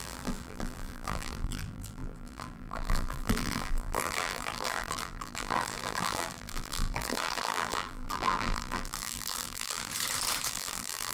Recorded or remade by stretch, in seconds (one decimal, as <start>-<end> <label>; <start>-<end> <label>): 0.0-9.9 remade; 9.9-10.5 recorded; 10.5-11.1 remade